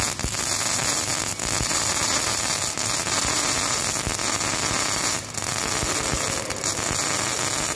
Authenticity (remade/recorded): recorded